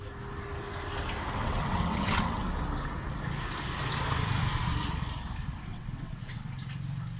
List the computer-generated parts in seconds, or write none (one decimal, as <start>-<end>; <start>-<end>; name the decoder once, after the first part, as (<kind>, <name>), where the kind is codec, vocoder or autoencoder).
1.4-2.5 (vocoder, WaveNeXt); 5.7-6.5